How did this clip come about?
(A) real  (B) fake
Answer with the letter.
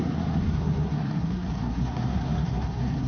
B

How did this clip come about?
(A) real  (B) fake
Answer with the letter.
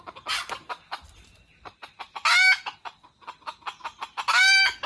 A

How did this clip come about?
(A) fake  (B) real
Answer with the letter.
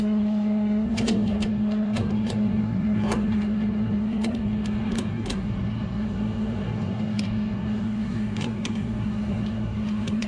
A